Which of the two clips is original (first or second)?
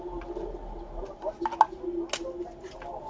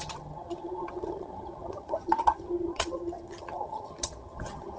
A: first